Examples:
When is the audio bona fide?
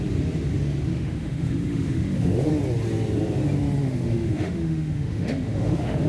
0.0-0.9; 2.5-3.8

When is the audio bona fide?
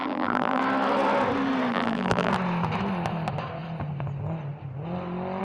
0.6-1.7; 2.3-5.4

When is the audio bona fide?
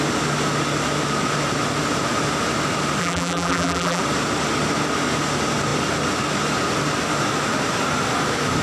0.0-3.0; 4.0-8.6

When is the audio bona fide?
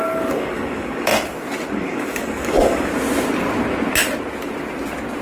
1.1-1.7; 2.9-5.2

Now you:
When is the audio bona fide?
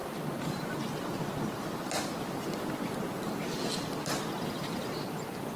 0.0-5.6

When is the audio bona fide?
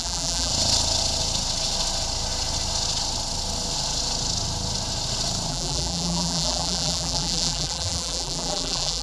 0.5-5.5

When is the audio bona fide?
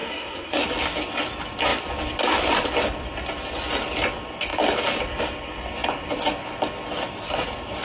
0.6-7.8